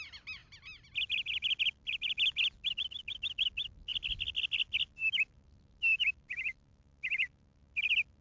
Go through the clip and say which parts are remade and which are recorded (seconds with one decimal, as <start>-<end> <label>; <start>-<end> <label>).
0.0-8.2 recorded